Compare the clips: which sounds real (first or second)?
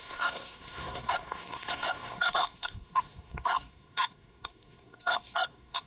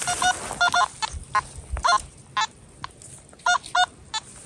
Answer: second